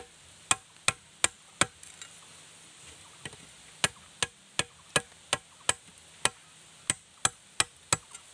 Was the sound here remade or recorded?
recorded